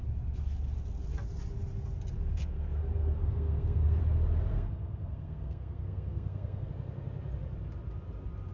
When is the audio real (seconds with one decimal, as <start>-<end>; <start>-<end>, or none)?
0.0-2.3; 4.0-4.5; 6.7-8.5